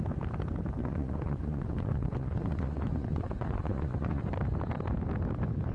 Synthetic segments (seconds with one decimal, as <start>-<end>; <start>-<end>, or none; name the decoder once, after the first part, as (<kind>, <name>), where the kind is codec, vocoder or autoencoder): 0.8-4.2 (vocoder, Vocos)

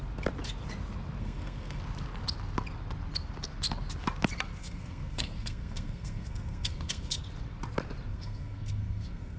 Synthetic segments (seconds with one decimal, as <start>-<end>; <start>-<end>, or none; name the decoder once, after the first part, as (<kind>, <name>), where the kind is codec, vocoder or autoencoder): 1.2-1.8 (codec, SNAC); 4.6-7.2; 8.1-9.4

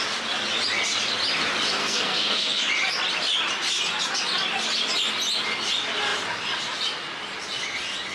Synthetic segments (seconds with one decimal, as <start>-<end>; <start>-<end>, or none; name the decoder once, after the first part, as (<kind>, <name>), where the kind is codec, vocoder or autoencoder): 1.8-2.7 (codec, SNAC)

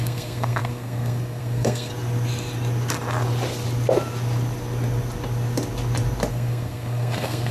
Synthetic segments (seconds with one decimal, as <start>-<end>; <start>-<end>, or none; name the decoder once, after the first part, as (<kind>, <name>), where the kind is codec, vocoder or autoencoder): 0.0-1.9 (codec, SNAC); 6.3-7.5

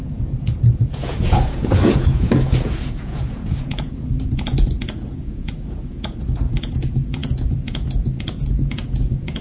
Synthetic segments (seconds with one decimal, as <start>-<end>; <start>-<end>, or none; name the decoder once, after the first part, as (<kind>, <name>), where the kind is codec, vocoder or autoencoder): 0.0-9.4 (vocoder, Vocos)